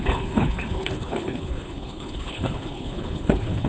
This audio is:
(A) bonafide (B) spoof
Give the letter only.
B